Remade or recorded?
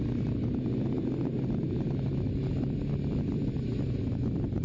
recorded